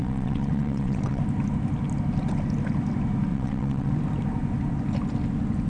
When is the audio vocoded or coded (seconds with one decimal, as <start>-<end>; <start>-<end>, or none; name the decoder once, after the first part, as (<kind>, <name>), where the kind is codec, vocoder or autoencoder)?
0.0-1.2 (vocoder, WaveNeXt); 3.3-3.9